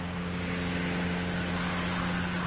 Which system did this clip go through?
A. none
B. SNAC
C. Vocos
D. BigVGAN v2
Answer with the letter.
A